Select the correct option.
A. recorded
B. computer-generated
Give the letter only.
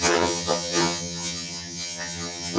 B